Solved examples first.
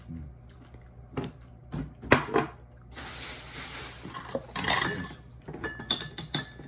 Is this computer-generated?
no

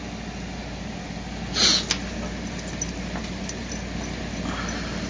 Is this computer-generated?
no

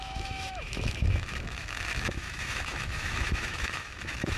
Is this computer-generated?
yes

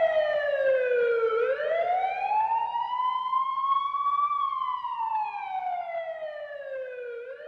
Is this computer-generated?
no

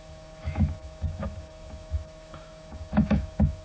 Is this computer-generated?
yes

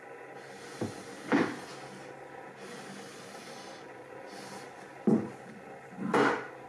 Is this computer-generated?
no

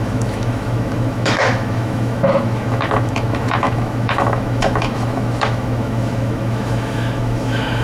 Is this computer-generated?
yes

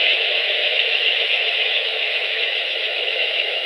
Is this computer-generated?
yes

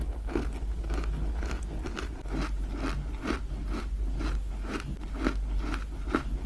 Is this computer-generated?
no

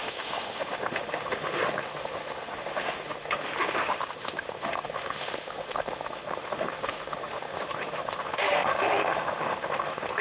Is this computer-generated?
yes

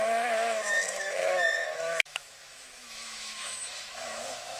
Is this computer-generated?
yes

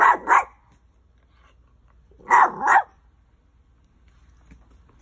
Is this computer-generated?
no